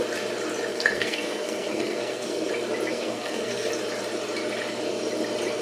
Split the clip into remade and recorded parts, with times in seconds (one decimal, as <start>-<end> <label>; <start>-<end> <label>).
0.0-0.7 recorded; 0.7-2.5 remade; 2.5-2.9 recorded; 2.9-3.7 remade; 3.7-5.6 recorded